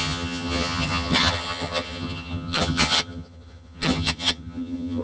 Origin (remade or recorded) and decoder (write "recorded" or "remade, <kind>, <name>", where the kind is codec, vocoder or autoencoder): remade, vocoder, HiFi-GAN